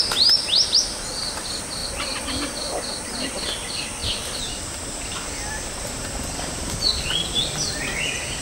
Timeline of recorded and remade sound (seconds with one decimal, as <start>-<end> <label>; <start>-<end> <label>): 0.0-4.0 recorded; 4.0-8.4 remade